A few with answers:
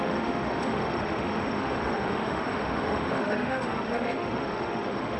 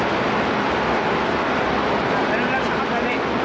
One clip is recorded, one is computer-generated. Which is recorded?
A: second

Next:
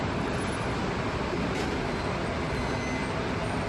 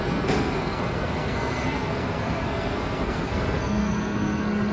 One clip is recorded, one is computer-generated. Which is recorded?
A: first